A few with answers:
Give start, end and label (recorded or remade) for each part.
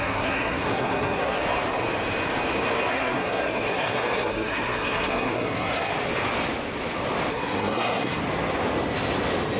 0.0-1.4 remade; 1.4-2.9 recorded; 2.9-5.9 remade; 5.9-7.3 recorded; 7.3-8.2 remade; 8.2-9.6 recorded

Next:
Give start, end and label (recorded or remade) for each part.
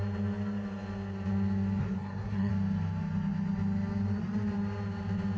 0.0-1.8 recorded; 1.8-2.5 remade; 2.5-5.4 recorded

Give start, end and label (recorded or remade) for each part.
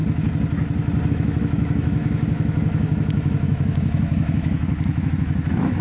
0.0-1.1 recorded; 1.1-5.8 remade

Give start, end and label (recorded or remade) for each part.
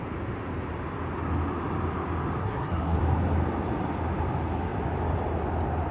0.0-2.4 recorded; 2.4-3.0 remade; 3.0-5.9 recorded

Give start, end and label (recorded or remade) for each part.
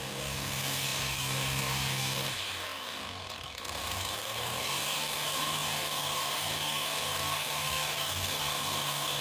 0.0-9.2 remade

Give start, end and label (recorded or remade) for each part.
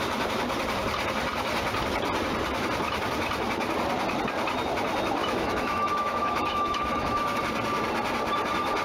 0.0-5.2 recorded; 5.2-7.4 remade; 7.4-8.8 recorded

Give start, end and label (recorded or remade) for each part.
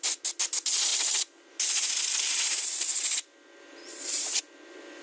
0.0-3.8 recorded; 3.8-4.4 remade; 4.4-5.0 recorded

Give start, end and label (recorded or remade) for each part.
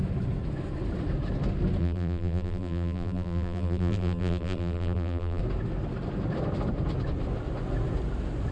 0.0-1.8 recorded; 1.8-5.4 remade; 5.4-8.5 recorded